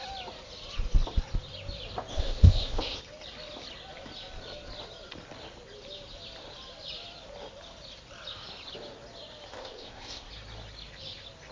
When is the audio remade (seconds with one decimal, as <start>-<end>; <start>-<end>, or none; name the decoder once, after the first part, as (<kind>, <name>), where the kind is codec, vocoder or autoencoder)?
2.1-3.0 (codec, ZipCodec); 9.5-10.3